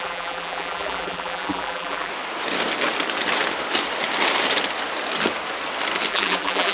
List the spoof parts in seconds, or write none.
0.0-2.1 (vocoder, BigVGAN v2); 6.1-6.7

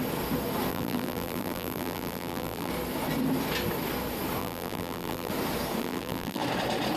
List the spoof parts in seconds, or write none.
0.7-2.7 (vocoder, BigVGAN v2); 4.4-5.3; 5.8-6.4

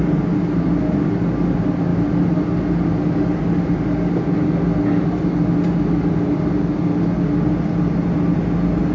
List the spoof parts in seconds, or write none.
none

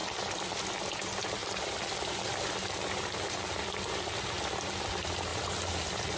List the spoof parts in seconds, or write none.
0.0-0.6 (vocoder, BigVGAN v2); 1.4-4.1; 5.3-6.2

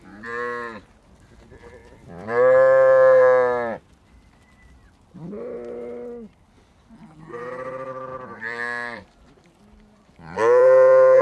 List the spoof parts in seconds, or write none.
1.8-4.7 (vocoder, BigVGAN v2); 8.1-11.2

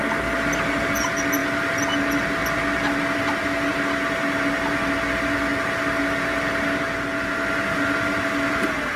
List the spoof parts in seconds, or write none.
5.5-6.2 (vocoder, BigVGAN v2); 7.1-7.6

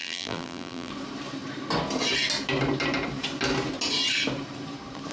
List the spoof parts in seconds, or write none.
0.0-0.9 (vocoder, BigVGAN v2)